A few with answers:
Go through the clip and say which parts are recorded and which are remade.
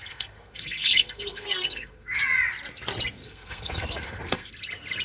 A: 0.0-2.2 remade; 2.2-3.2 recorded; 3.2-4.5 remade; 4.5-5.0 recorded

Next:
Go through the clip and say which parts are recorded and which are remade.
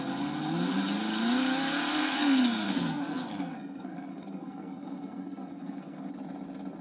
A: 0.0-2.0 recorded; 2.0-6.1 remade; 6.1-6.8 recorded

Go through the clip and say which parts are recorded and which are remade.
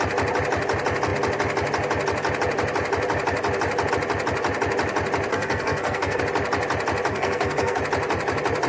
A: 0.0-5.3 recorded; 5.3-6.2 remade; 6.2-7.1 recorded; 7.1-7.8 remade; 7.8-8.7 recorded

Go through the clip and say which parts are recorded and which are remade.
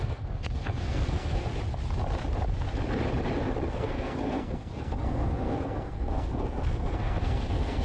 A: 0.0-1.5 remade; 1.5-3.7 recorded; 3.7-7.8 remade